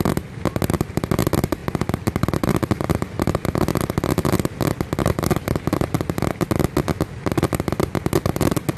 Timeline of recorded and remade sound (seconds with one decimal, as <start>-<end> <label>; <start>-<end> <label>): 0.0-8.8 recorded